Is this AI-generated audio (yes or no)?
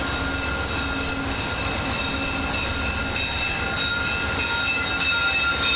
no